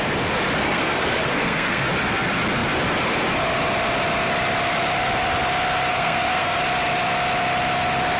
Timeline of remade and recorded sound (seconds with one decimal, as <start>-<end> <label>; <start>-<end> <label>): 0.0-0.6 recorded; 0.6-1.8 remade; 1.8-5.9 recorded; 5.9-6.6 remade; 6.6-8.2 recorded